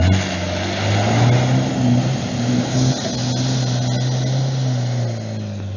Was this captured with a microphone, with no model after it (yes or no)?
yes